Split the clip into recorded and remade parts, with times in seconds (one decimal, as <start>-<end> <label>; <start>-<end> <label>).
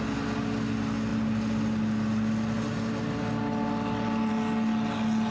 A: 0.0-5.3 recorded